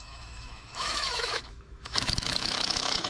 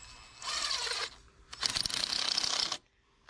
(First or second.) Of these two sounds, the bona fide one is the second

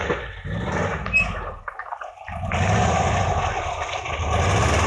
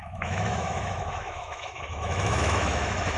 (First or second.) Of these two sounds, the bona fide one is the first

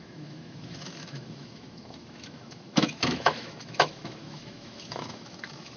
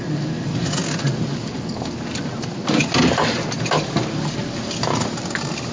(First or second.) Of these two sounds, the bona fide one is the second